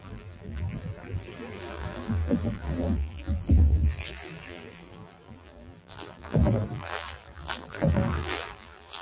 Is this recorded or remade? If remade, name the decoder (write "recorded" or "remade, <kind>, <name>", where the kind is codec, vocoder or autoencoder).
remade, vocoder, BigVGAN v2